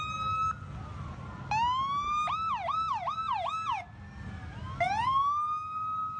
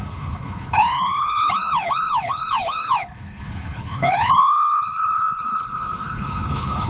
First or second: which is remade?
second